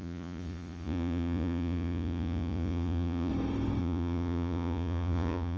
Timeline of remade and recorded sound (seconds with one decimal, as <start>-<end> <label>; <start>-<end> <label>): 0.0-3.3 remade; 3.3-3.8 recorded; 3.8-5.6 remade